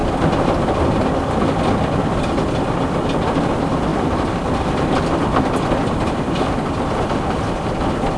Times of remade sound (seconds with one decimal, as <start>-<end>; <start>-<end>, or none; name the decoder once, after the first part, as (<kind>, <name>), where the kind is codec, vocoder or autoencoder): none

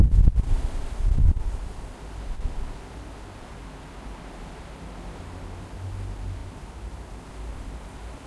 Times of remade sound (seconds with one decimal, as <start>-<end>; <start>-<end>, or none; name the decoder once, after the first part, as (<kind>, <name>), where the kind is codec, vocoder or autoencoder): none